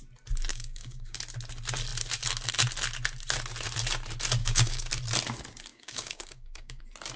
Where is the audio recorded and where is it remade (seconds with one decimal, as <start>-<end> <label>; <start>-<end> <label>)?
0.0-0.5 recorded; 0.5-1.2 remade; 1.2-4.4 recorded; 4.4-4.9 remade; 4.9-5.7 recorded; 5.7-6.8 remade; 6.8-7.2 recorded